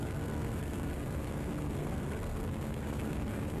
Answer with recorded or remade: remade